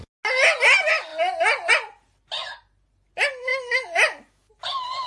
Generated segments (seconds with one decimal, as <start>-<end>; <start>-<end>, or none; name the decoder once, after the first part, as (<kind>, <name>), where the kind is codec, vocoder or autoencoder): 3.5-4.5 (autoencoder, DAC-VAE)